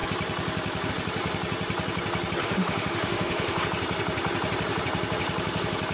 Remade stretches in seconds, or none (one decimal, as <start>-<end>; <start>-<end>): 2.4-3.6